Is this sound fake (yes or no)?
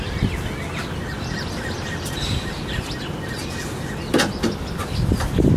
no